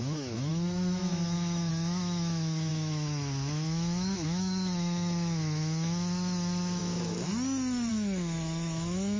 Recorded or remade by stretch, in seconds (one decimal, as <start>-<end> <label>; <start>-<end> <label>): 0.0-7.3 remade; 7.3-7.9 recorded; 7.9-9.2 remade